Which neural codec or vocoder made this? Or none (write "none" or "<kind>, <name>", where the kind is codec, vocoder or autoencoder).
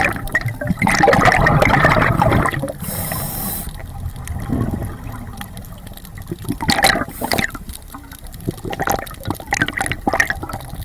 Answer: none